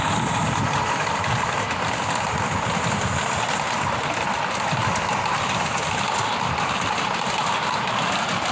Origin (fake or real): real